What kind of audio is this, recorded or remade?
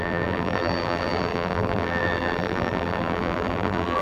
remade